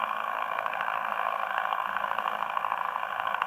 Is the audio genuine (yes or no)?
no